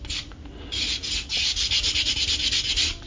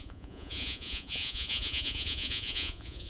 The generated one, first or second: second